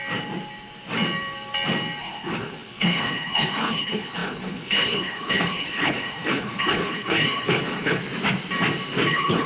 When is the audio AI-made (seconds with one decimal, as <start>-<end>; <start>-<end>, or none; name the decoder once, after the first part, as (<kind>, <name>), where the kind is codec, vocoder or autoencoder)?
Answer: 2.0-8.0 (codec, HILCodec); 9.1-9.5